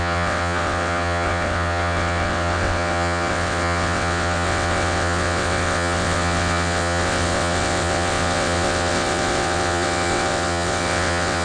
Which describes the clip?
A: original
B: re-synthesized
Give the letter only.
B